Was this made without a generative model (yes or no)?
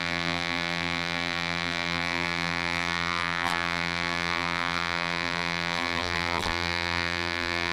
no